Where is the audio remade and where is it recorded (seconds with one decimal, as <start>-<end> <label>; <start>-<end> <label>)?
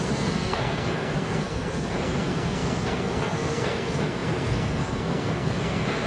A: 0.0-6.1 remade